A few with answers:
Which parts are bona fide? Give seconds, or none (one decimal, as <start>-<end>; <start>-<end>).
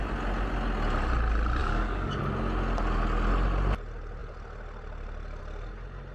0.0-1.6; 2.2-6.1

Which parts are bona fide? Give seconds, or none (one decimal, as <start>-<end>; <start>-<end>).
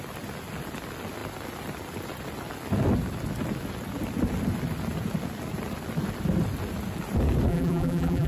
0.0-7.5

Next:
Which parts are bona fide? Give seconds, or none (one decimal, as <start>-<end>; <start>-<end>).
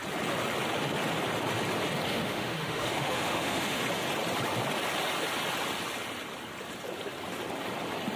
0.0-2.1; 3.8-8.2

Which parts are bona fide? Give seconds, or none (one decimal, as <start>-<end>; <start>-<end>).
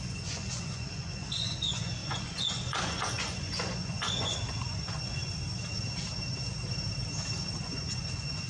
5.2-7.6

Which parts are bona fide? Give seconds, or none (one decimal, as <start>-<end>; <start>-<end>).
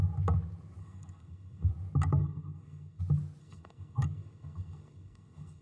0.0-0.8; 1.7-2.2; 3.0-3.4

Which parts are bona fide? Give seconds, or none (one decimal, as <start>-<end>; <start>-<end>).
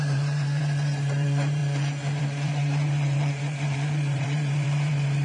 1.6-2.2